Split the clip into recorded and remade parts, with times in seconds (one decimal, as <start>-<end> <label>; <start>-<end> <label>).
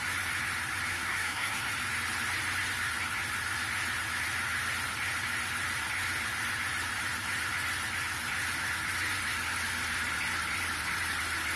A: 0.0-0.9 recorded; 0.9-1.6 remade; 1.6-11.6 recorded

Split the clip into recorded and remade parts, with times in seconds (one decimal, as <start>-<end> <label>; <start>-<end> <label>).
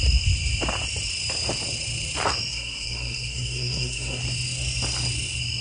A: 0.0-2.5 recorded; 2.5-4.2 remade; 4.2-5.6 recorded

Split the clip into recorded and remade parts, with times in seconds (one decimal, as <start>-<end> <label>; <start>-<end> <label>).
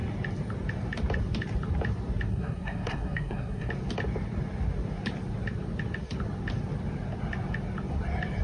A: 0.0-2.3 recorded; 2.3-3.7 remade; 3.7-8.4 recorded